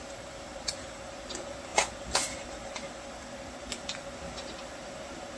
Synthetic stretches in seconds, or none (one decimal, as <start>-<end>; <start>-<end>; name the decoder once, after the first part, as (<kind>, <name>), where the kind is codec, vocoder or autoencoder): none